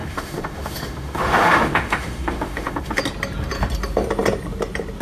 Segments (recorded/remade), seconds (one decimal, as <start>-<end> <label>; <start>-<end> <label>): 0.0-3.0 remade; 3.0-5.0 recorded